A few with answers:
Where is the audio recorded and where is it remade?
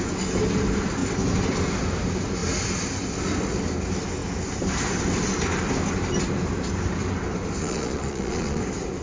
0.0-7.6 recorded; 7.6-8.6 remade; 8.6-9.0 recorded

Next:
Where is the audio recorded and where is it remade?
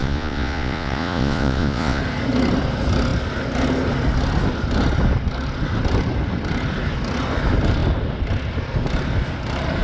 0.0-2.0 remade; 2.0-9.8 recorded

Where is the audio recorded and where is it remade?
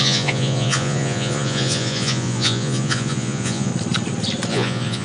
0.0-3.7 remade; 3.7-4.5 recorded; 4.5-5.0 remade